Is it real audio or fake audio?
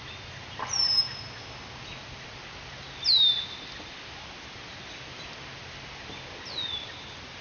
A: real